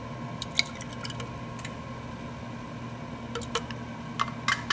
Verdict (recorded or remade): recorded